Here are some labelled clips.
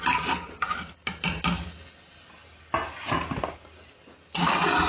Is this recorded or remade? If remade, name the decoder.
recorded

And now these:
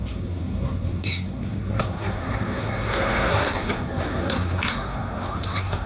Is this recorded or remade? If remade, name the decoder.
remade, codec, SNAC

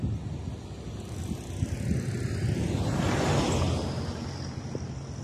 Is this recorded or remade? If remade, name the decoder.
recorded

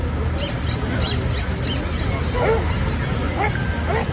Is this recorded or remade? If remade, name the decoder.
recorded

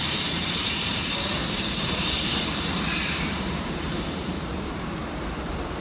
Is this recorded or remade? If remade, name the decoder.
remade, vocoder, BigVGAN v2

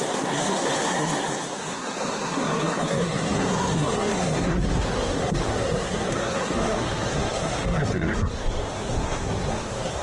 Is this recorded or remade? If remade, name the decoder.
remade, codec, SNAC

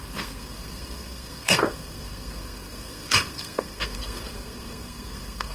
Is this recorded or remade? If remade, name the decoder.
remade, codec, SNAC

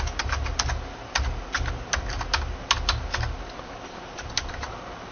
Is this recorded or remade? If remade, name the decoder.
recorded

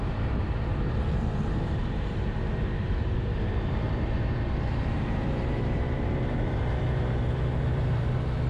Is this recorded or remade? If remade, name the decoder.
remade, vocoder, BigVGAN v2